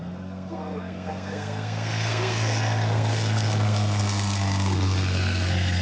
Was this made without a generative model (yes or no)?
no